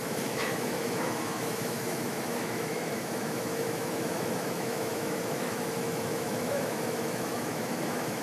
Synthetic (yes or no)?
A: yes